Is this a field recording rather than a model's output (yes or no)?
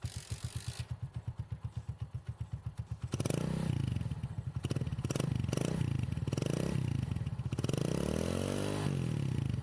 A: yes